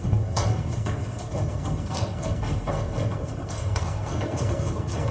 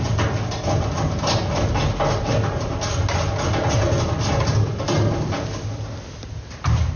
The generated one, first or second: first